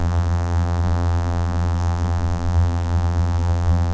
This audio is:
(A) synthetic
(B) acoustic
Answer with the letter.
A